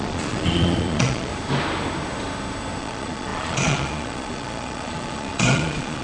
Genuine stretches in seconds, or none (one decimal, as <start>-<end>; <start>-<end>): 1.3-2.8